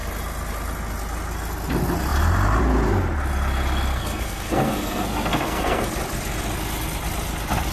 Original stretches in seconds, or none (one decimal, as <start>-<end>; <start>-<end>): 0.0-3.9; 5.9-7.7